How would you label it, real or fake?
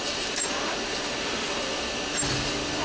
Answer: real